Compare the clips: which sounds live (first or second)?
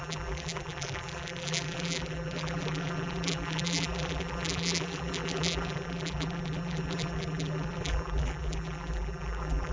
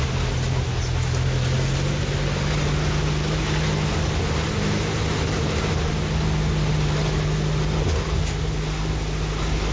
second